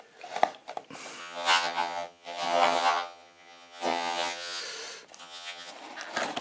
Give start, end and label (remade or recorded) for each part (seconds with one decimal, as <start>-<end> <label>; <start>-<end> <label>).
0.0-1.2 recorded; 1.2-4.6 remade; 4.6-5.2 recorded; 5.2-5.7 remade; 5.7-6.4 recorded